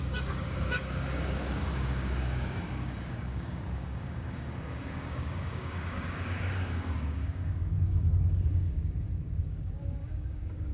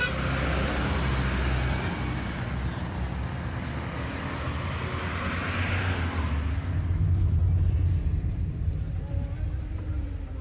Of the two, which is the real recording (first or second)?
second